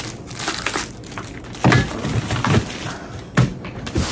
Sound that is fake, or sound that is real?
real